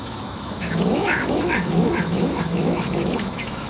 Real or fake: fake